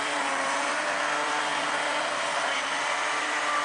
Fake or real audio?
fake